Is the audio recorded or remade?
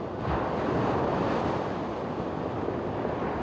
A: recorded